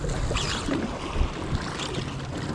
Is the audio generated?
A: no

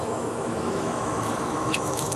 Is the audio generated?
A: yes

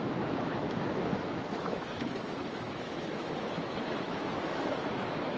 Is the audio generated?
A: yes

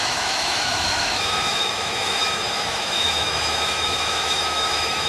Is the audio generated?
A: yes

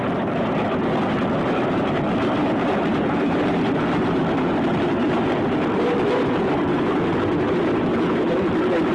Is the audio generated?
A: no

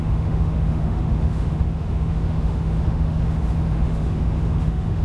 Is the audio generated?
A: yes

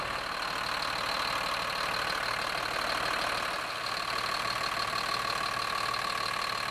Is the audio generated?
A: no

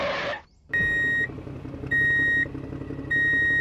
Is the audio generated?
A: no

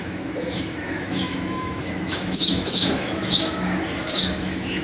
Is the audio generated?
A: yes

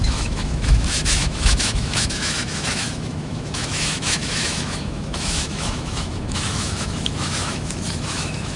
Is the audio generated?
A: yes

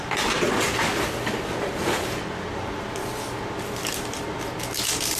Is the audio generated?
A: no